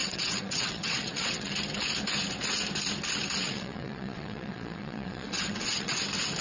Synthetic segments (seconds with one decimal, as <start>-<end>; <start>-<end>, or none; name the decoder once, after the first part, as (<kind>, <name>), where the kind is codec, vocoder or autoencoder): 0.0-1.5 (vocoder, WaveNeXt); 3.4-6.0